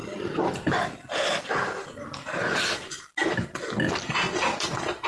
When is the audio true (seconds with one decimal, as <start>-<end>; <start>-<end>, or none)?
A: 0.0-5.1